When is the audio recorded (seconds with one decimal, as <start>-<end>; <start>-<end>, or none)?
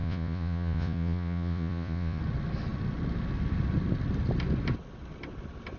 2.2-5.8